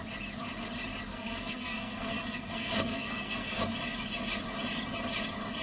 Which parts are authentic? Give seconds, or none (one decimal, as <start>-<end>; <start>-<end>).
0.0-1.1; 3.6-5.6